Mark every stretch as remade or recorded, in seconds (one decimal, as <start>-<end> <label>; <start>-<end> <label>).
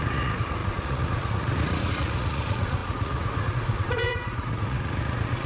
0.0-5.5 remade